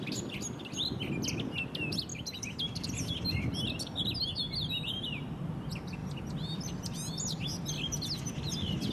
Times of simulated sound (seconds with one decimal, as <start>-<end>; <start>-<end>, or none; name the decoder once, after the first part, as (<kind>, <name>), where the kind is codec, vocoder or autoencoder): 2.1-4.0 (vocoder, BigVGAN v2); 6.0-6.7